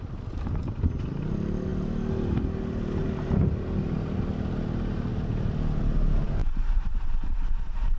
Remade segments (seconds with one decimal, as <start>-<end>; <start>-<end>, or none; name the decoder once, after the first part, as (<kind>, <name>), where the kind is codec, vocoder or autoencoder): 6.4-8.0 (vocoder, BigVGAN v2)